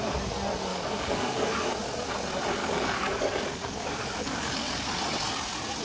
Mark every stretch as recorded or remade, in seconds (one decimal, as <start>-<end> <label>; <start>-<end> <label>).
0.0-0.7 recorded; 0.7-1.8 remade; 1.8-2.6 recorded; 2.6-5.0 remade; 5.0-5.8 recorded